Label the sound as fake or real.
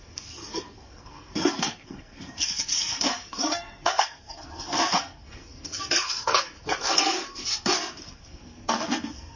fake